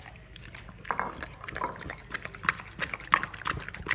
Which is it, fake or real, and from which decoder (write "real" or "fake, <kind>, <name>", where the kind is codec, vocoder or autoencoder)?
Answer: real